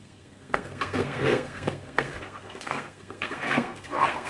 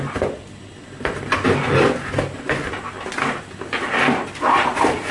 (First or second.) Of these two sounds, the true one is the second